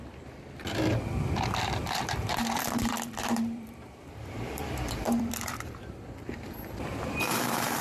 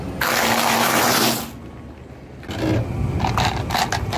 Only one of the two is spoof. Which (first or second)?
first